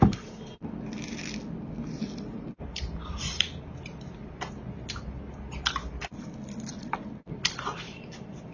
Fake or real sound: real